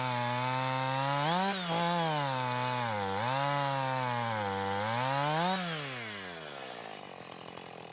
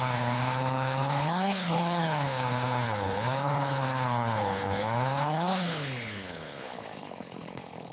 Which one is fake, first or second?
second